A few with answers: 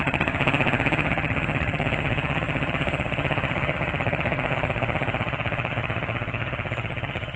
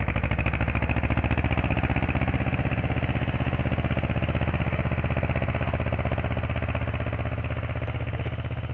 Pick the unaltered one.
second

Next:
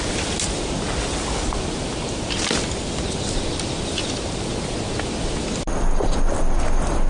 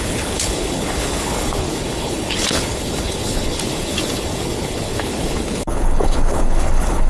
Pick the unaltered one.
first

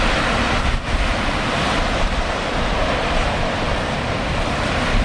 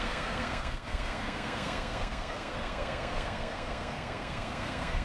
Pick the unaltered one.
first